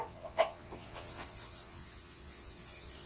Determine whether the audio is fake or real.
fake